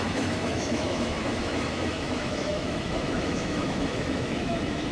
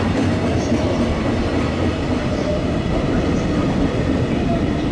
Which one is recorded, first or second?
second